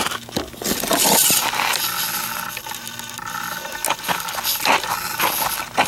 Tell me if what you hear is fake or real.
real